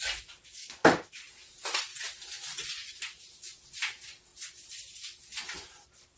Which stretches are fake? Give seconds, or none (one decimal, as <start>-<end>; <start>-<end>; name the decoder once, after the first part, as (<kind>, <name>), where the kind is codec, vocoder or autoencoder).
0.6-1.1 (autoencoder, DAC-VAE)